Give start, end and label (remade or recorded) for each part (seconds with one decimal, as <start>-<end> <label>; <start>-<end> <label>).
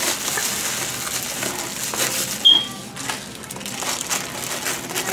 0.0-5.1 recorded